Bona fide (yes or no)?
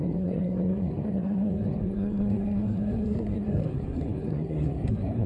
no